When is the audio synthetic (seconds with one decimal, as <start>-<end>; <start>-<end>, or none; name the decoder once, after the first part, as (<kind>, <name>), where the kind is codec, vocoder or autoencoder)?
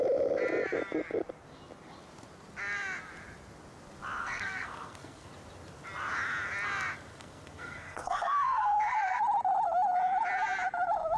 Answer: 4.2-5.3 (codec, SNAC); 7.1-9.2